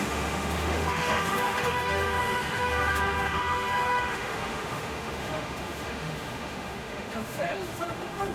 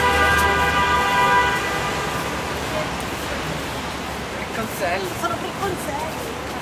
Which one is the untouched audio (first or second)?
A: second